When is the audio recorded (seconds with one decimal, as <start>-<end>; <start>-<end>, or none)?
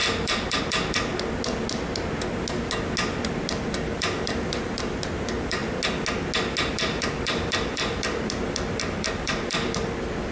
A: 1.1-3.6; 5.6-6.7